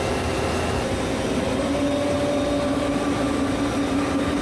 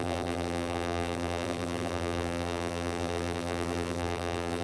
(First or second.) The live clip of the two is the first